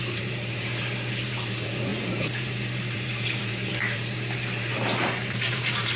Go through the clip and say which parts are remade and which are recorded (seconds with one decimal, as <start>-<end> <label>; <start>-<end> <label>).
0.0-6.0 remade